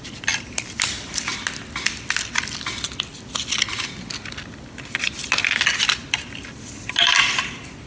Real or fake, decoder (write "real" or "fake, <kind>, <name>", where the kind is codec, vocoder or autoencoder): real